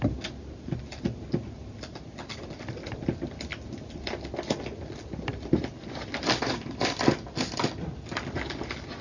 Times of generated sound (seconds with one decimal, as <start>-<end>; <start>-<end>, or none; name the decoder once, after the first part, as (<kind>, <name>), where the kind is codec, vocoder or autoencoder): none